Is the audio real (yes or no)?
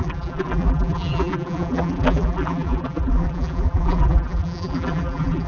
no